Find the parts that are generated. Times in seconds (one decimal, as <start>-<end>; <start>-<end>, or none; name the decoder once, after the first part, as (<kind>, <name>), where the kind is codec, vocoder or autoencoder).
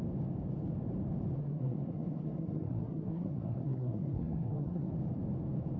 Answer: 1.4-4.9 (codec, SNAC)